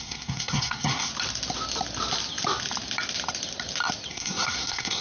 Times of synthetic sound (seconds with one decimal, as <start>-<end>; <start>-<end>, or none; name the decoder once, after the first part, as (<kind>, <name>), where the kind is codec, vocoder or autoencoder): 0.0-1.1 (codec, SNAC); 4.1-5.0